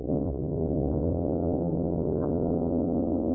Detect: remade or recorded remade